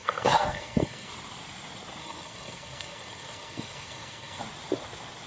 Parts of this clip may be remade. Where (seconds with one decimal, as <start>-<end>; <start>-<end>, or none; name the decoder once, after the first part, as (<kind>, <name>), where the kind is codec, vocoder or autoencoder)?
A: 0.0-1.1 (codec, SNAC); 2.0-4.4